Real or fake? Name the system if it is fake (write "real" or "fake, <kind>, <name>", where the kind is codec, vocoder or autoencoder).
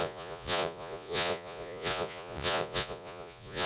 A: fake, vocoder, Vocos